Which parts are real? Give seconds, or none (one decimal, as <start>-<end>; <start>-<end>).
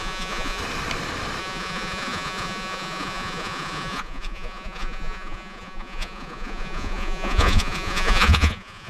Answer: 0.6-1.4